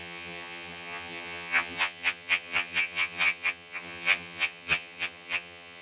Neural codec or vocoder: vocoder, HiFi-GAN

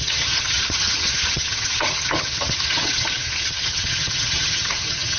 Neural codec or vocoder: vocoder, HiFi-GAN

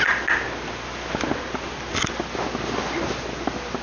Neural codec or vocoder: none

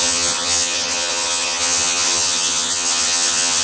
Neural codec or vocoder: vocoder, HiFi-GAN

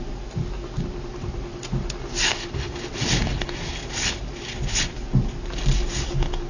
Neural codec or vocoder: none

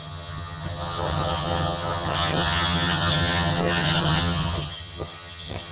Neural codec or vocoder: vocoder, HiFi-GAN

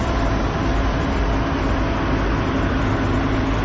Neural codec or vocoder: none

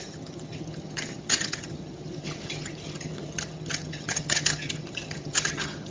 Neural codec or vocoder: vocoder, HiFi-GAN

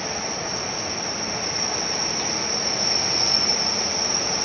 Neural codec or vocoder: none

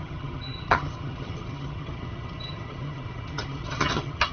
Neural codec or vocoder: vocoder, HiFi-GAN